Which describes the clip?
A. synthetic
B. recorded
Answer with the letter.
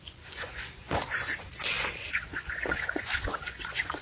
A